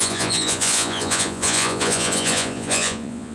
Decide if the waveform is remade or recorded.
remade